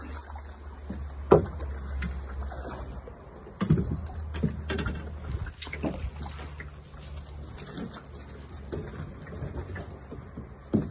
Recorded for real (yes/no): yes